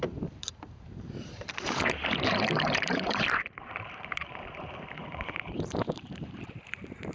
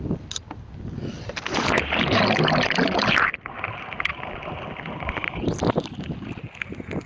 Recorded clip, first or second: second